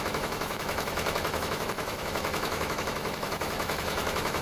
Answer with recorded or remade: remade